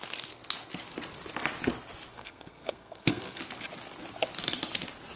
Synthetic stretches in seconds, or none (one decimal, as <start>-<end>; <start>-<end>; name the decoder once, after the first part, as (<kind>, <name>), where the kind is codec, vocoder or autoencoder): 2.1-3.4 (codec, SNAC)